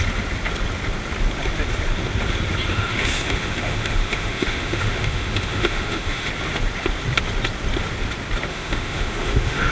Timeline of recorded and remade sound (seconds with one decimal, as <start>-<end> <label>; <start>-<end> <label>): 0.0-2.7 recorded; 2.7-6.3 remade; 6.3-8.5 recorded; 8.5-9.7 remade